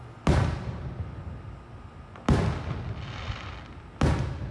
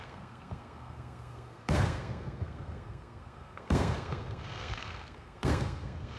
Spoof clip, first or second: second